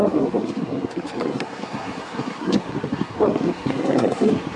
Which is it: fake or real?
fake